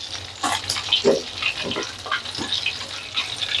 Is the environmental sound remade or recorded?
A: recorded